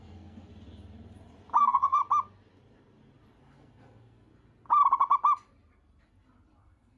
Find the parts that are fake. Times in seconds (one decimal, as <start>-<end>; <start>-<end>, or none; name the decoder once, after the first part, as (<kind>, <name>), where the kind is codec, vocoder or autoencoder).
0.0-0.5 (codec, SNAC); 1.6-2.0; 3.4-4.3; 6.6-7.0